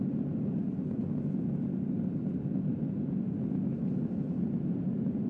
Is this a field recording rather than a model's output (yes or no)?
yes